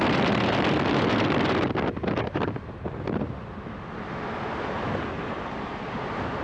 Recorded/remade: recorded